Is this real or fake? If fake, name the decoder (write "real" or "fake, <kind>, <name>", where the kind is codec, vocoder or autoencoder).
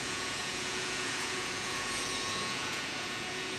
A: fake, vocoder, Vocos